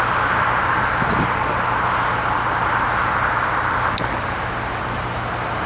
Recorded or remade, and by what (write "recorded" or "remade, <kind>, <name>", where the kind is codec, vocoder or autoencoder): recorded